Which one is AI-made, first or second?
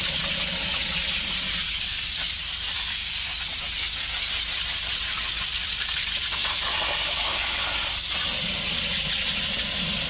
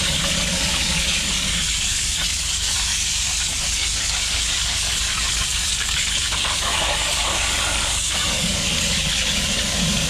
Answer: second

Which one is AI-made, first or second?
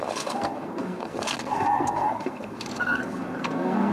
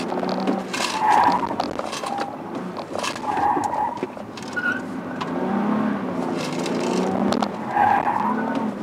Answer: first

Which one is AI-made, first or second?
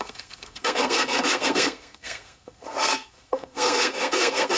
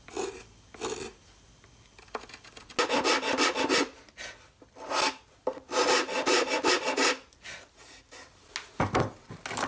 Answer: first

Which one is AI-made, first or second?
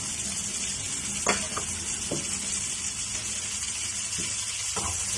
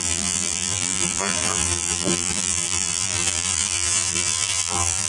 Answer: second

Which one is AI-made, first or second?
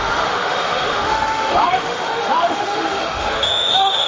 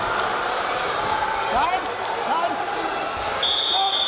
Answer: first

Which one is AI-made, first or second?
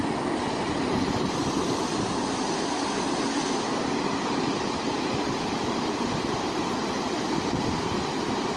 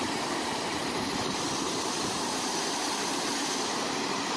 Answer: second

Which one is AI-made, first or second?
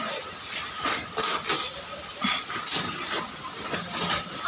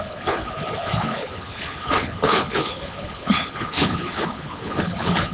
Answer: second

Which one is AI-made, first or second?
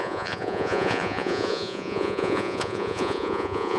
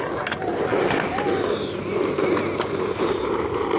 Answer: first